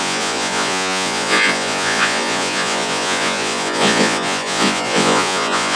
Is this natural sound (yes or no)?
no